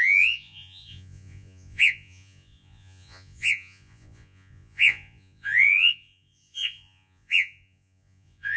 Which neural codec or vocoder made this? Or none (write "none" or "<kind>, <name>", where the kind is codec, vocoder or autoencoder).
vocoder, Vocos